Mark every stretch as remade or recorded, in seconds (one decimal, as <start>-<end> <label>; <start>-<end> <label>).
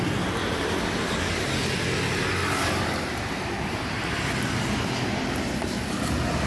0.0-0.4 recorded; 0.4-1.3 remade; 1.3-2.4 recorded; 2.4-6.5 remade